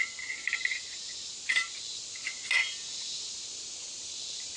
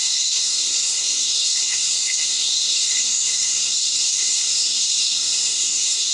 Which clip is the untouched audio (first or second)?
first